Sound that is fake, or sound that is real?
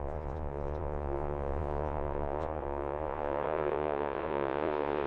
fake